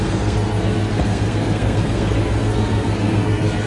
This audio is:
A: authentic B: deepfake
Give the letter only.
B